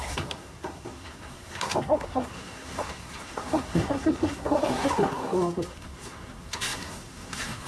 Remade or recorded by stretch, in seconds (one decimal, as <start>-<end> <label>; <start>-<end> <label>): 0.0-7.7 remade